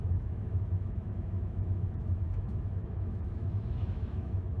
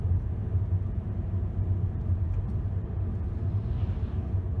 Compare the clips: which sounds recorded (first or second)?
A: second